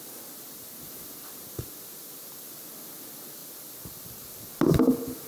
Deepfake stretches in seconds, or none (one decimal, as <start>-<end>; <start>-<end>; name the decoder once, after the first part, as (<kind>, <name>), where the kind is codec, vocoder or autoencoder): none